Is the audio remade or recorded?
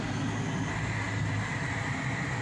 remade